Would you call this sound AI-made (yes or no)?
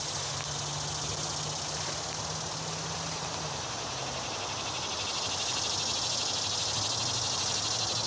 no